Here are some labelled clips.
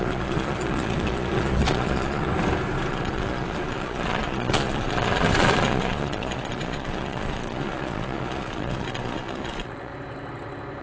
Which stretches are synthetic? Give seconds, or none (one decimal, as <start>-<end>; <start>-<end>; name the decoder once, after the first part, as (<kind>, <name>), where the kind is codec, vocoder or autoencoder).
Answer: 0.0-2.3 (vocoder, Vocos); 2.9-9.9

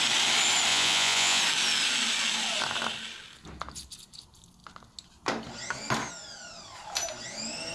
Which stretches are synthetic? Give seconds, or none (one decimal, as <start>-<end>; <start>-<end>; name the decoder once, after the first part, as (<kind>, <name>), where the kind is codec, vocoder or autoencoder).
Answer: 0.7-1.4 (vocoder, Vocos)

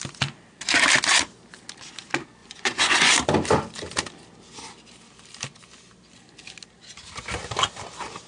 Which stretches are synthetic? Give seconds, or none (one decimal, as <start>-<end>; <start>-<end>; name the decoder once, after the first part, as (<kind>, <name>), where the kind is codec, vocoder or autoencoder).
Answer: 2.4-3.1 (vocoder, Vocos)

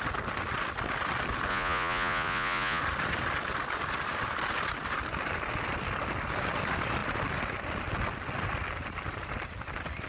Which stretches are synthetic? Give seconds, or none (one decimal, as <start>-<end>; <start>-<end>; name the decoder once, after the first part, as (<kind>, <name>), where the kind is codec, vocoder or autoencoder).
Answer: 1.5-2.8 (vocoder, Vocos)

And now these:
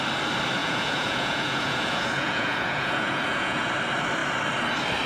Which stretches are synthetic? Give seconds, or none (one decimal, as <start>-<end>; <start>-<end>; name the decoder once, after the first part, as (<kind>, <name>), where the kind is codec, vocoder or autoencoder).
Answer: 0.6-3.7 (vocoder, Vocos)